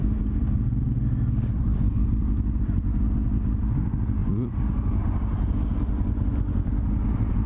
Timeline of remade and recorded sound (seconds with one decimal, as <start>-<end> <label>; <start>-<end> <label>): 0.0-7.5 recorded